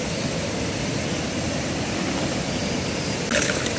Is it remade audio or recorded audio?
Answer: recorded